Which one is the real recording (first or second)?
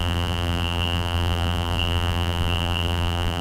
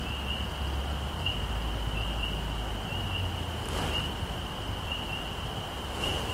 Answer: second